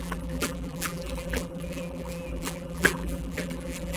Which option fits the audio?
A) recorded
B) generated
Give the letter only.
B